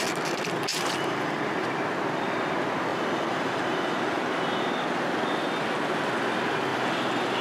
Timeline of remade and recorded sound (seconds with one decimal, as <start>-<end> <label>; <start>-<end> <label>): 0.0-0.7 recorded; 0.7-1.3 remade; 1.3-2.9 recorded; 2.9-4.2 remade; 4.2-6.7 recorded; 6.7-7.4 remade